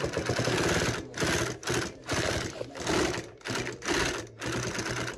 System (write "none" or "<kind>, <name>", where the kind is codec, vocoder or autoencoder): none